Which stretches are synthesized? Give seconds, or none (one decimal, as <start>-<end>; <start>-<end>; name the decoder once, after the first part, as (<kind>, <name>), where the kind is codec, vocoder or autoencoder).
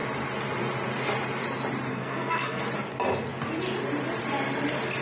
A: 1.9-2.6 (codec, SNAC)